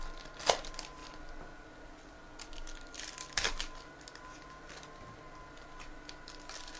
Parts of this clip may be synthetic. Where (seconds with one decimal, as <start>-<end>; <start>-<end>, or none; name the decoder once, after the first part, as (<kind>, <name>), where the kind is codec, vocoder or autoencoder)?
none